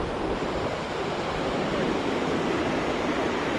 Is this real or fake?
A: real